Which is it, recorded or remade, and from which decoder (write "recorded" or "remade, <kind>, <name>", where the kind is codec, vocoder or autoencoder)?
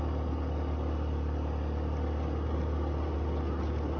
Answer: recorded